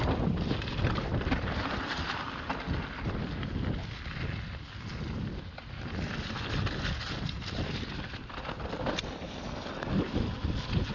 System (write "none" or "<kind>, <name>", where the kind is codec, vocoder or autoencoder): none